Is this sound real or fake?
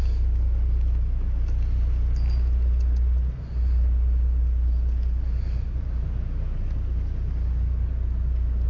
real